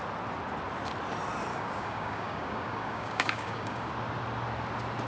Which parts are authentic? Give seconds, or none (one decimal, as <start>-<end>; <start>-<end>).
0.0-1.5; 3.9-5.1